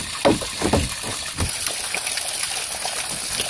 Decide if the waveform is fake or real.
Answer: real